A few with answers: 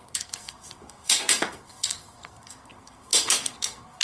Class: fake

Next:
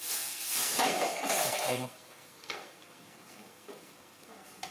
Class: fake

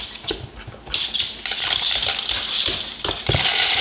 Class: real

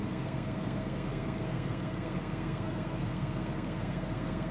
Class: fake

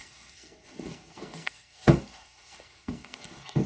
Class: fake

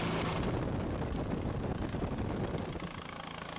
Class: real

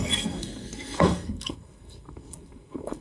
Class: fake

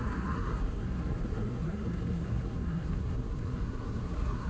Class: fake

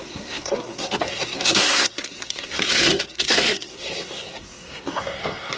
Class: fake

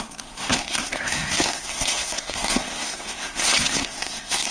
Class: fake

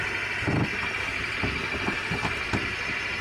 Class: real